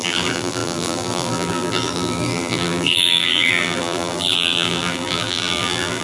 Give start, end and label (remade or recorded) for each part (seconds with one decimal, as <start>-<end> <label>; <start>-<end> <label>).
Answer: 0.0-6.0 remade

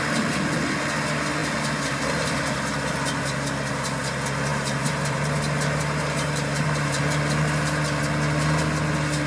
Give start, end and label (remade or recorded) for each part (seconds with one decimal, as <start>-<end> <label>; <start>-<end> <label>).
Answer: 0.0-4.5 recorded; 4.5-7.0 remade; 7.0-9.3 recorded

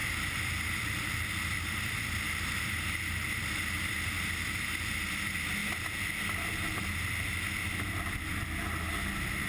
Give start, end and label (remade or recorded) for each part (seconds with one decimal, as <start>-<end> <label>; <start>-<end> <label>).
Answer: 0.0-5.6 remade; 5.6-9.1 recorded; 9.1-9.5 remade

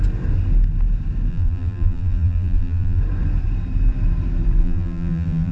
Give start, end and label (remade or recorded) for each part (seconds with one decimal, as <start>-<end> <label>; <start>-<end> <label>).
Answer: 0.0-1.3 recorded; 1.3-3.0 remade; 3.0-4.6 recorded; 4.6-5.5 remade

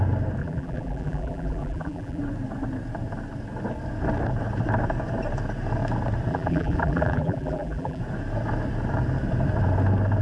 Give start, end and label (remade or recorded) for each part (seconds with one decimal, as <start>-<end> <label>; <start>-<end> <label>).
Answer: 0.0-0.4 recorded; 0.4-2.2 remade; 2.2-6.3 recorded; 6.3-8.0 remade; 8.0-10.2 recorded

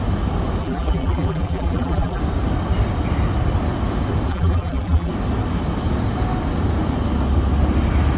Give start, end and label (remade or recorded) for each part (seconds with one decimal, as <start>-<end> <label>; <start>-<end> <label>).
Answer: 0.0-0.6 recorded; 0.6-2.2 remade; 2.2-4.3 recorded; 4.3-5.1 remade; 5.1-8.2 recorded

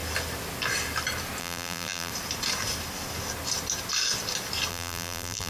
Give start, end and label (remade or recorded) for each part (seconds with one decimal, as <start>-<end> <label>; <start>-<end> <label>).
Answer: 0.0-1.4 recorded; 1.4-2.1 remade; 2.1-4.7 recorded; 4.7-5.5 remade

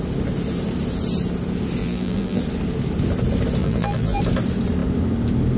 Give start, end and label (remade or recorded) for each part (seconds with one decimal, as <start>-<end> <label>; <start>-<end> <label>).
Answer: 0.0-1.8 recorded; 1.8-2.4 remade; 2.4-3.6 recorded; 3.6-4.2 remade; 4.2-5.6 recorded